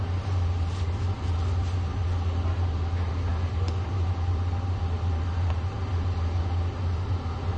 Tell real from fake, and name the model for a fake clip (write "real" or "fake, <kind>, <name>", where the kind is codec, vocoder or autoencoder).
real